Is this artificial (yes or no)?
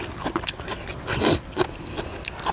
no